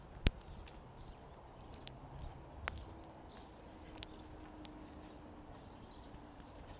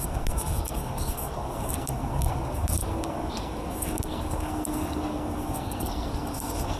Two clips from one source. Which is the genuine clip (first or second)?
first